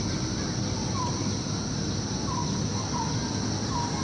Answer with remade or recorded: recorded